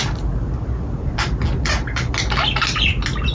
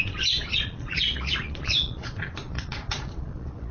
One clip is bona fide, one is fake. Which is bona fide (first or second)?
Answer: first